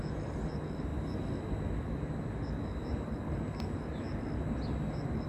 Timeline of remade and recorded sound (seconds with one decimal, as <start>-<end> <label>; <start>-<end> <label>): 0.0-5.3 recorded